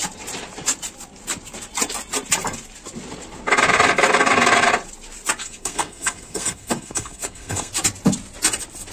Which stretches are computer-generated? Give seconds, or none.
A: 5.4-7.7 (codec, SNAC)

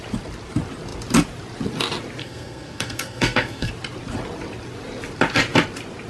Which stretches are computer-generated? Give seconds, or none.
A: 2.2-3.7 (codec, SNAC)

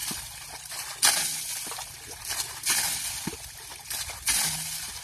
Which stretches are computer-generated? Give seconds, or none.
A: none

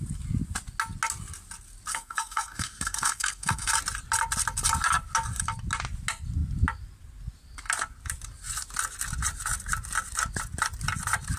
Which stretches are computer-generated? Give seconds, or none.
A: 1.9-3.7 (codec, SNAC)